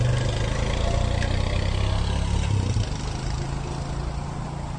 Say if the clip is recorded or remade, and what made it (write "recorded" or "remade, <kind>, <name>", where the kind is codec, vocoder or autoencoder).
recorded